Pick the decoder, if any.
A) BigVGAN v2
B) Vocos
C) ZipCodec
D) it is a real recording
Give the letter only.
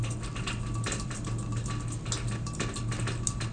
D